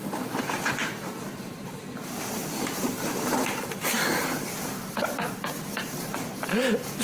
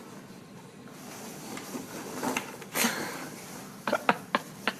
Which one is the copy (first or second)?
first